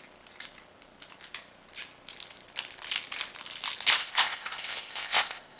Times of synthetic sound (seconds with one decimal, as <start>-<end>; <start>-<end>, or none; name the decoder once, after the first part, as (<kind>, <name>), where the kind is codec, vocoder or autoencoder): 4.0-5.6 (codec, ZipCodec)